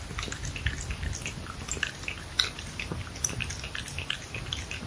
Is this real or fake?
real